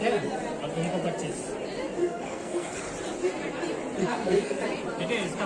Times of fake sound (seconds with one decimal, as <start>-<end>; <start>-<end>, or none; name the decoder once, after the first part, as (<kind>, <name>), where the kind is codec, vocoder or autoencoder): 2.0-2.8 (codec, SNAC); 4.0-4.6

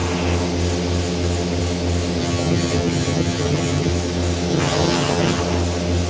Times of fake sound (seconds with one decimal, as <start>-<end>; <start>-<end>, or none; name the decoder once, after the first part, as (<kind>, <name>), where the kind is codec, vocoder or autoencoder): 2.2-3.9 (vocoder, HiFi-GAN); 4.5-5.4

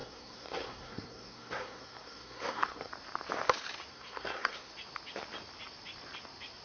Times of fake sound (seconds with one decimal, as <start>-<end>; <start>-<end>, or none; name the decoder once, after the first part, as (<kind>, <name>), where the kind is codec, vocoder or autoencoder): 0.0-2.9 (codec, SNAC); 3.9-4.7

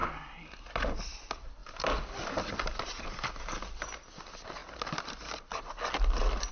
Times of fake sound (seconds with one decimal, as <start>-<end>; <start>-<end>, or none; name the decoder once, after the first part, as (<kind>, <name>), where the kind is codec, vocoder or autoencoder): none

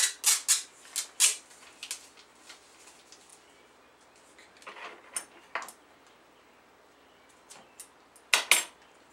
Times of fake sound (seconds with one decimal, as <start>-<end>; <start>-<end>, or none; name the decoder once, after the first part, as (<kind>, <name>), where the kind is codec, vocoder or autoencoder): none

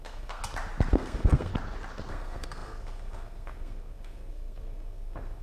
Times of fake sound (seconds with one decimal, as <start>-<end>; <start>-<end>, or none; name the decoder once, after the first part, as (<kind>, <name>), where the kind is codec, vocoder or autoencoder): 0.0-0.4 (codec, SNAC); 0.9-1.5; 2.1-5.4